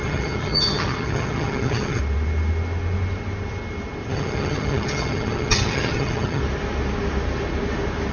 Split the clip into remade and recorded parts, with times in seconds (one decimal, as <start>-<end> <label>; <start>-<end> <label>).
0.0-2.0 remade; 2.0-4.1 recorded; 4.1-6.4 remade; 6.4-8.1 recorded